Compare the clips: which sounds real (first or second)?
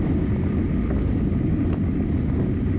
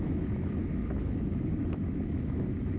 first